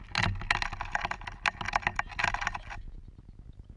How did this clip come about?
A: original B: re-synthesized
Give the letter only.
A